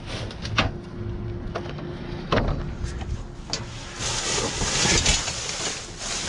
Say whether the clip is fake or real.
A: real